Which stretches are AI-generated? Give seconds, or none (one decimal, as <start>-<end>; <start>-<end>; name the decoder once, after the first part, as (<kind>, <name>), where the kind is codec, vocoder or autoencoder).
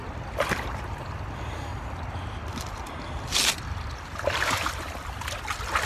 0.0-1.7 (vocoder, BigVGAN v2); 3.6-5.9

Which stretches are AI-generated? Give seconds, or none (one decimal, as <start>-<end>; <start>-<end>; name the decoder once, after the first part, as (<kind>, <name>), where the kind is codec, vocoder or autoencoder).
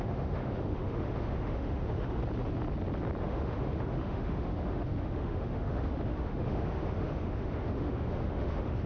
0.0-2.2 (autoencoder, DAC-VAE); 3.2-8.9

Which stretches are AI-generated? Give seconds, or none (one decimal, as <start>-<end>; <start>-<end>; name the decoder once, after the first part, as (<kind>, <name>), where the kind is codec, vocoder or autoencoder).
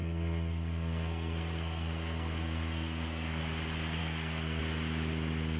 0.0-3.4 (codec, SNAC); 4.0-4.6